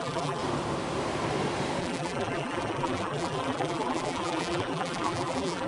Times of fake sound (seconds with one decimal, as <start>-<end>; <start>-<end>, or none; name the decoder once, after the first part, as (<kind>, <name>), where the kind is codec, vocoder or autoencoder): 0.0-0.4 (vocoder, BigVGAN v2); 1.8-5.7